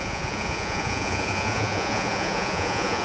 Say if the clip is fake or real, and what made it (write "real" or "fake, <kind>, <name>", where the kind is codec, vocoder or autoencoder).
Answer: fake, vocoder, Vocos